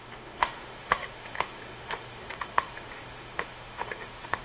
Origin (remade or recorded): remade